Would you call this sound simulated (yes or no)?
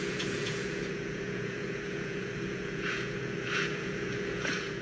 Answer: yes